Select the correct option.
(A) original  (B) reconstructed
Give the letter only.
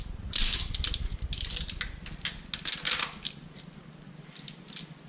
A